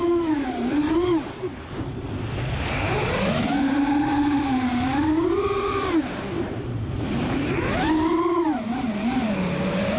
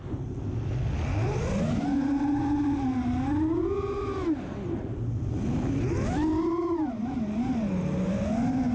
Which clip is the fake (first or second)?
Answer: first